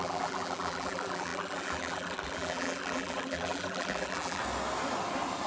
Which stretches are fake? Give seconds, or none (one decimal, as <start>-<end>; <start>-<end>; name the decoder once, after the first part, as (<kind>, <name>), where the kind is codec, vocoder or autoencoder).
0.0-4.4 (vocoder, BigVGAN v2)